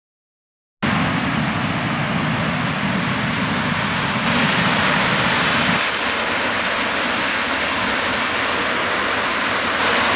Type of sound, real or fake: real